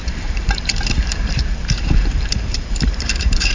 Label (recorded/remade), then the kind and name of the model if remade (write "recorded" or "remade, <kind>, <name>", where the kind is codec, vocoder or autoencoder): remade, vocoder, BigVGAN v2